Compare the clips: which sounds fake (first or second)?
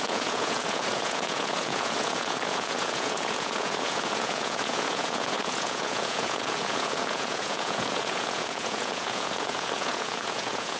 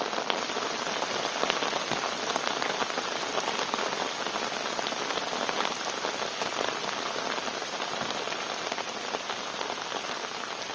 first